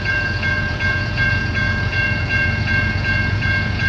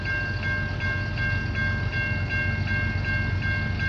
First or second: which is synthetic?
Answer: first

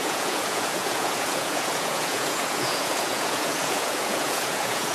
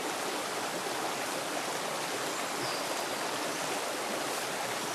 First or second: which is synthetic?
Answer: first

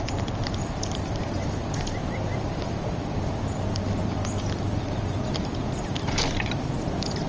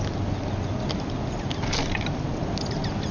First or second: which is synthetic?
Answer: first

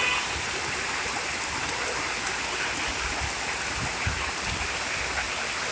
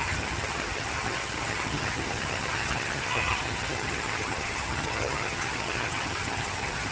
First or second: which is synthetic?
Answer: second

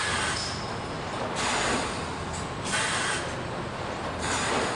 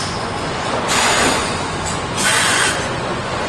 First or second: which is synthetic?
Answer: second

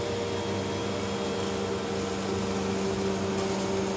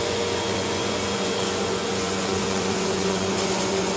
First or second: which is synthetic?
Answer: second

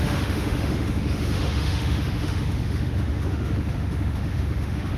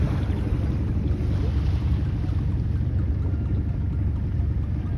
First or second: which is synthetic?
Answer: first